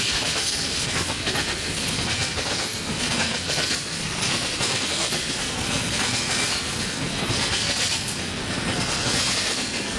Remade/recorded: remade